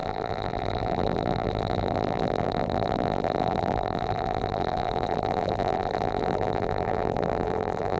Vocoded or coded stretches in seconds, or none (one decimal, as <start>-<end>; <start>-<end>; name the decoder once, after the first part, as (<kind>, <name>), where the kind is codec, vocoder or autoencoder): 0.0-8.0 (vocoder, BigVGAN v2)